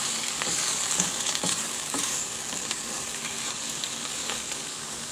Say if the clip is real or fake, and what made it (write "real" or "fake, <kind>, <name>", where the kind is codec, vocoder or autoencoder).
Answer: fake, codec, DAC